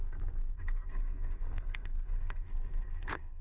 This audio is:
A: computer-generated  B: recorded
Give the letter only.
A